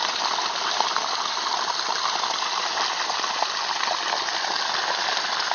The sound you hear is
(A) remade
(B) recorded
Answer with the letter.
B